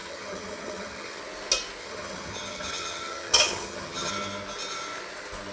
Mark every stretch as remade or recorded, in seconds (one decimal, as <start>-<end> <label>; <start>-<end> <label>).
0.0-1.2 remade; 1.2-1.8 recorded; 1.8-4.1 remade; 4.1-5.5 recorded